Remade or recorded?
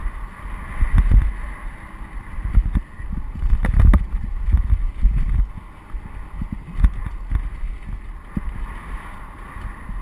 recorded